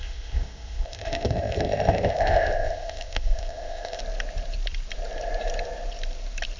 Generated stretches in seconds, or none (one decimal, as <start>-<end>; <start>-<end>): 0.0-4.0